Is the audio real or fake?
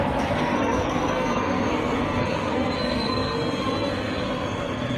fake